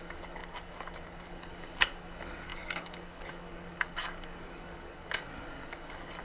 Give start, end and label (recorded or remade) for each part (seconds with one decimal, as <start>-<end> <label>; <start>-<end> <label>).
0.0-6.2 remade